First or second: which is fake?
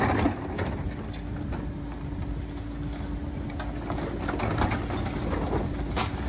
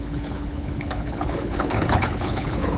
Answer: second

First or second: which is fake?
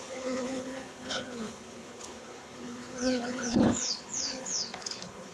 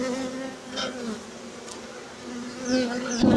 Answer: first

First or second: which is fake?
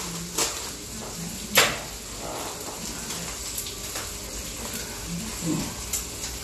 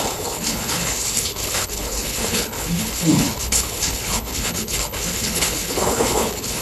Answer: second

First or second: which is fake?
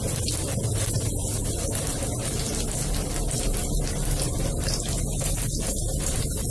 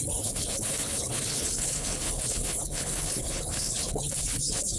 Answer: second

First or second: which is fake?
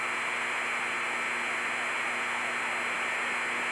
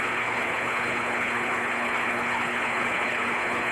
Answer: second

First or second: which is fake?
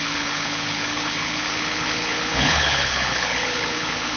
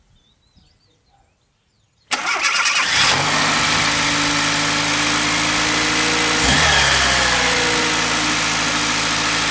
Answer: first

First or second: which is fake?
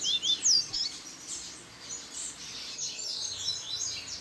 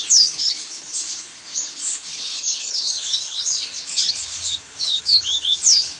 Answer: second